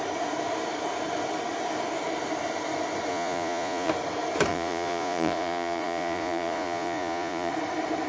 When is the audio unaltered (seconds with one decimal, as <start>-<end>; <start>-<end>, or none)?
0.0-3.1; 3.9-4.5; 7.5-8.1